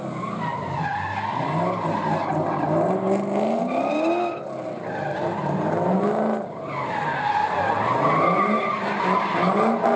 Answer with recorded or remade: recorded